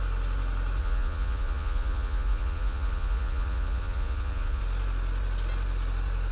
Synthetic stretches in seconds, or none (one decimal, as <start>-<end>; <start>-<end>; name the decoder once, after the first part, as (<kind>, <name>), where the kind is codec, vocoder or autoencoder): 0.8-4.6 (vocoder, Vocos)